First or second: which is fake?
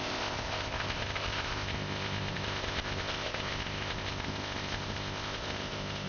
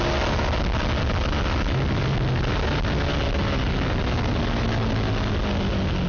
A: first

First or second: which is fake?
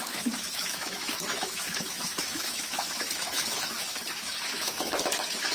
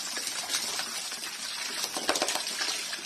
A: first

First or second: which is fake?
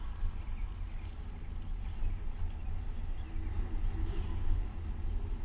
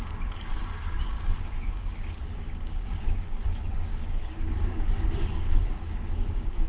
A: second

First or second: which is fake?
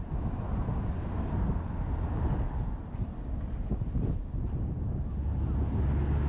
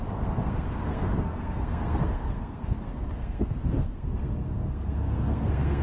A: second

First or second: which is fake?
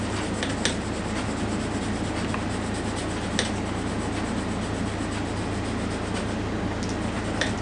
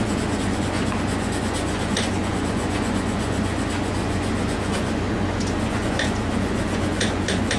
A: second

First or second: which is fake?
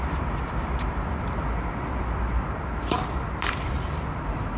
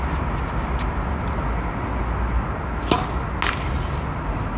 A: first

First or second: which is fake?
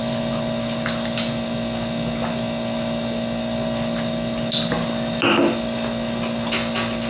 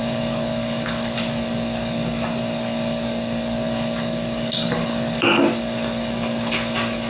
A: second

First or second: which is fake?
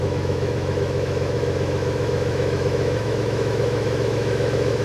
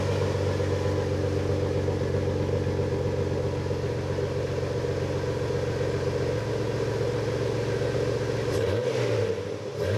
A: first